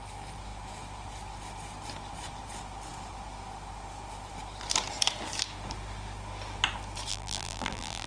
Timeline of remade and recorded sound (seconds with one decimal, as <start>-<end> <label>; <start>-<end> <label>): 0.0-7.1 recorded; 7.1-8.1 remade